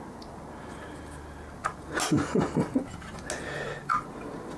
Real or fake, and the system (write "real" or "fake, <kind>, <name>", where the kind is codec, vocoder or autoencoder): real